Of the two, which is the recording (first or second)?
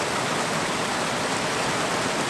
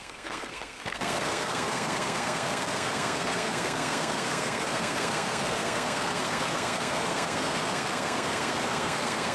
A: first